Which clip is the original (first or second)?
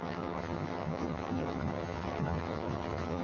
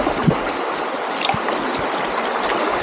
second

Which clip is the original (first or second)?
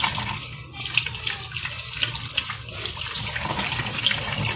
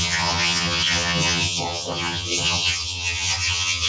first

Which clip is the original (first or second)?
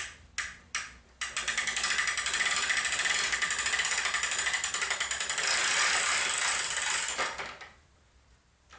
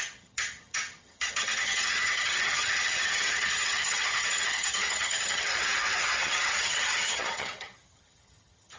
first